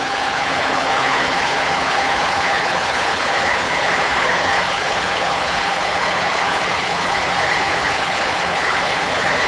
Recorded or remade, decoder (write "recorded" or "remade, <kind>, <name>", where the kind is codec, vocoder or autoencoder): remade, codec, HILCodec